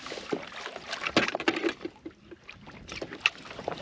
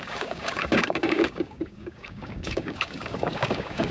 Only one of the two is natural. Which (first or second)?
first